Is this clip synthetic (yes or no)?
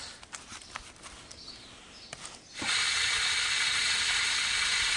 no